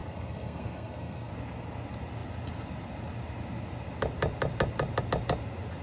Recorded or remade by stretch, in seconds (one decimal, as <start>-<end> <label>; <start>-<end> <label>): 0.0-1.3 remade; 1.3-5.8 recorded